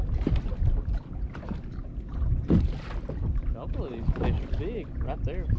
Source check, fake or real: real